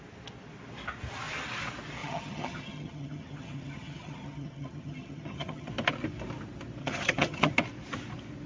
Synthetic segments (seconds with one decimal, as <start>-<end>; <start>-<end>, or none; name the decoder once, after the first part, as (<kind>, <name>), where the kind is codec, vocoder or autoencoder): 2.0-5.7 (vocoder, HiFi-GAN); 6.8-7.5